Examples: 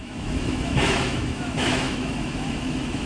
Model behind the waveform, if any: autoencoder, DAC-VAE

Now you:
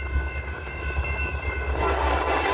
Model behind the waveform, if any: codec, DAC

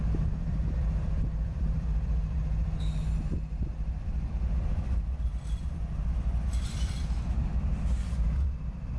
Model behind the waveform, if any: vocoder, BigVGAN v2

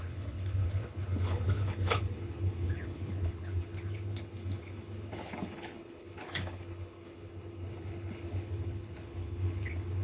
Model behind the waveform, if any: codec, HILCodec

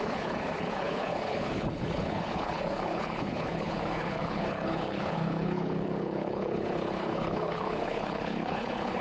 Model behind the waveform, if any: codec, HILCodec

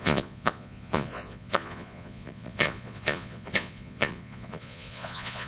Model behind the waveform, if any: vocoder, Vocos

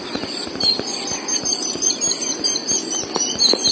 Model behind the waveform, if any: none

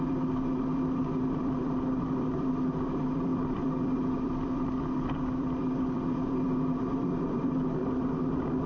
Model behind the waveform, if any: vocoder, BigVGAN v2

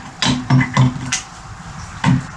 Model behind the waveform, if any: none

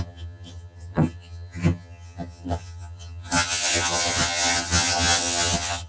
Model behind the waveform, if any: vocoder, HiFi-GAN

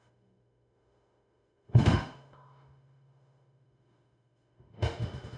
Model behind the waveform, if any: autoencoder, DAC-VAE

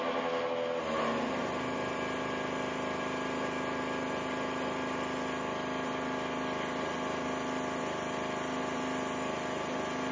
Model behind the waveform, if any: none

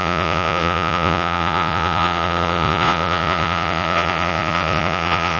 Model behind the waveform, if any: vocoder, Vocos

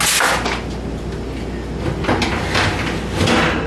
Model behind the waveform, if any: none